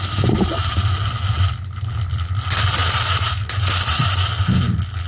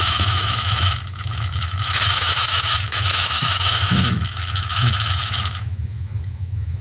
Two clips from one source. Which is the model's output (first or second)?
second